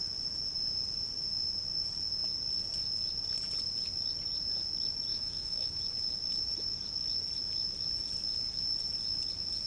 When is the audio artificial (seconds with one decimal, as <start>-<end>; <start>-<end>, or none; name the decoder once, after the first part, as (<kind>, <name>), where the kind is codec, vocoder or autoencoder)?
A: 5.1-5.8 (autoencoder, DAC-VAE)